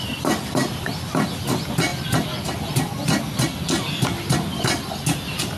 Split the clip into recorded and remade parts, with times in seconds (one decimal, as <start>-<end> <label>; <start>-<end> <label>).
0.0-5.6 recorded